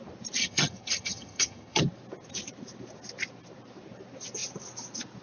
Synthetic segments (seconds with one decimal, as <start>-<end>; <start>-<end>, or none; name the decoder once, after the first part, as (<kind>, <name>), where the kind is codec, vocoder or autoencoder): 0.4-1.8 (vocoder, HiFi-GAN)